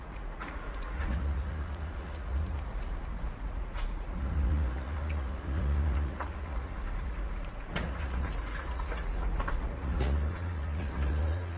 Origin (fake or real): fake